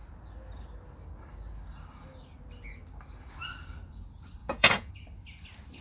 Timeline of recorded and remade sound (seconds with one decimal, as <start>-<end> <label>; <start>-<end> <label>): 0.0-4.4 recorded; 4.4-4.9 remade; 4.9-5.8 recorded